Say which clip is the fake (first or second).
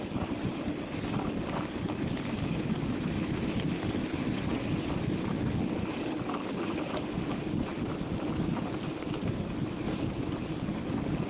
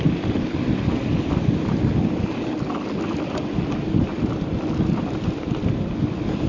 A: first